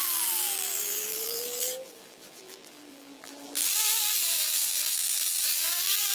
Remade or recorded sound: remade